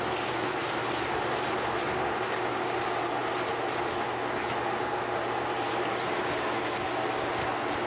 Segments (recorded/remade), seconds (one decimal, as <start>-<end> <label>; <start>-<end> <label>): 0.0-7.9 recorded